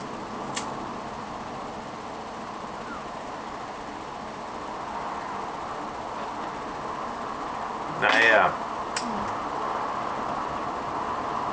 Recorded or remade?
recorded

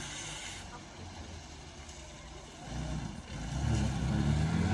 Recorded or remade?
recorded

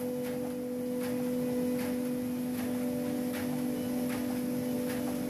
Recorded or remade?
recorded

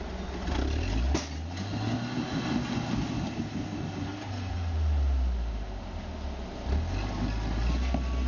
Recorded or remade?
recorded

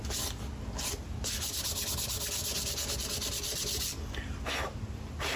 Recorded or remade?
recorded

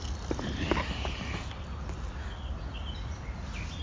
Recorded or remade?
recorded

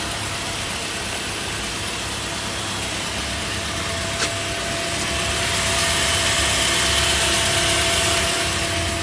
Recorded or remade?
recorded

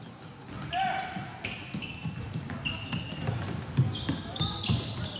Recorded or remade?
recorded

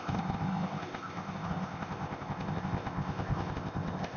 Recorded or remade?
remade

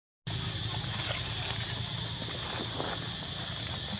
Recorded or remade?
recorded